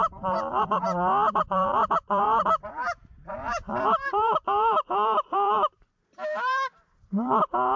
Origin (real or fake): fake